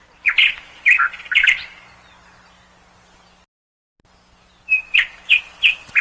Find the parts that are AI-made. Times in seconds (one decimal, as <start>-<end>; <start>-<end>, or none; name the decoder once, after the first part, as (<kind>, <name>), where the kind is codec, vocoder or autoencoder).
4.8-5.4 (vocoder, BigVGAN v2)